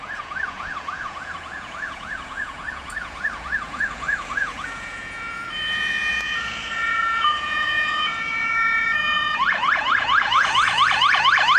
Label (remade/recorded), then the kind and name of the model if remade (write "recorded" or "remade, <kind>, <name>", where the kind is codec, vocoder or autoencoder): remade, vocoder, Vocos